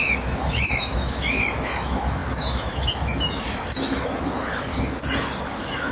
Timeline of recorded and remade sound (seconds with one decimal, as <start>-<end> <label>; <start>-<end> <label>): 0.0-4.7 remade; 4.7-5.5 recorded; 5.5-5.9 remade